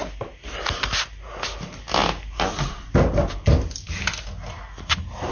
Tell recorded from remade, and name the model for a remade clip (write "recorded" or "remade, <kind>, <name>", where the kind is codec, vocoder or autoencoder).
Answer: recorded